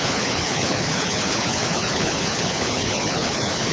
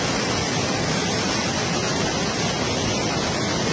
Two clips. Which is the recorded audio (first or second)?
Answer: second